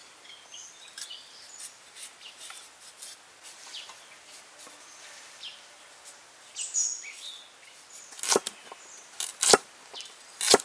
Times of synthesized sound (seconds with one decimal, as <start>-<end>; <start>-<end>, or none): none